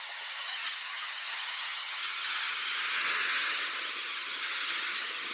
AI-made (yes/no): yes